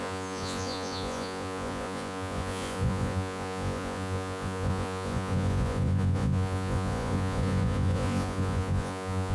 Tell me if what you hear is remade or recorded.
remade